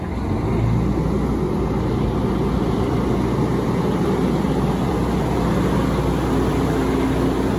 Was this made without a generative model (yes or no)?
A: yes